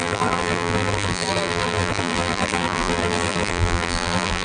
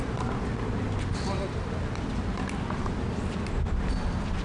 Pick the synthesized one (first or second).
first